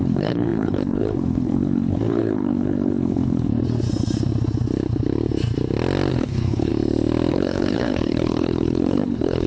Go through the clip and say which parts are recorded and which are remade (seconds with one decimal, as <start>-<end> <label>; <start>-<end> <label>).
0.0-3.5 remade; 3.5-6.1 recorded; 6.1-6.7 remade; 6.7-7.3 recorded; 7.3-9.5 remade